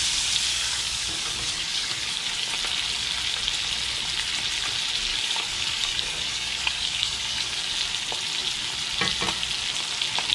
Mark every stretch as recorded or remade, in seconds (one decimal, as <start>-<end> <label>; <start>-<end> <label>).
0.0-0.5 recorded; 0.5-2.3 remade; 2.3-5.1 recorded; 5.1-7.7 remade; 7.7-10.3 recorded